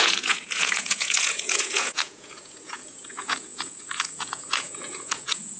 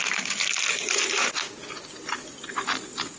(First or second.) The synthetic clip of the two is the first